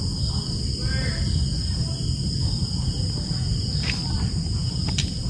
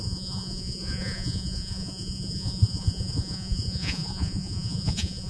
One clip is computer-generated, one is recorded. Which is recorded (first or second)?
first